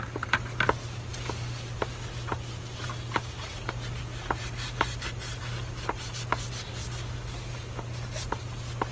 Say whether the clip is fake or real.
real